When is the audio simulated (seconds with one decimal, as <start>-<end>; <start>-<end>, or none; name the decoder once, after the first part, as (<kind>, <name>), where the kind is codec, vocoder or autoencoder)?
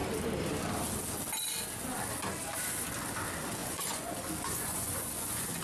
3.6-4.1 (vocoder, Vocos); 4.5-5.6